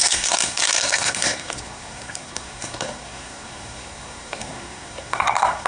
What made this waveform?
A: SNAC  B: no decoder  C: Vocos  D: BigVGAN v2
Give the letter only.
A